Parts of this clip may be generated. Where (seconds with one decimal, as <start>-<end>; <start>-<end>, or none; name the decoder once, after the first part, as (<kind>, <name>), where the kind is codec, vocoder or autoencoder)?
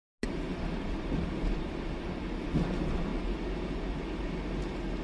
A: none